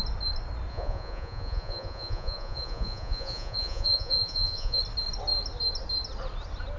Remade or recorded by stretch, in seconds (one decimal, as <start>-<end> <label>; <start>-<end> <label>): 0.0-0.7 recorded; 0.7-4.8 remade; 4.8-6.8 recorded